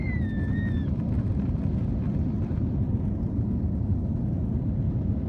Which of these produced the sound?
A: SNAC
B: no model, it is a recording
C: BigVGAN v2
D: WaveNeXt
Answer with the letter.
B